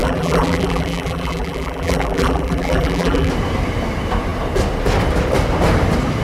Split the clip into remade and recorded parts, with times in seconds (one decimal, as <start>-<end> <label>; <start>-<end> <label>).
0.0-3.3 remade; 3.3-6.2 recorded